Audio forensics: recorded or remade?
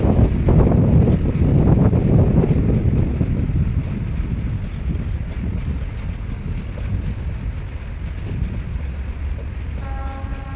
recorded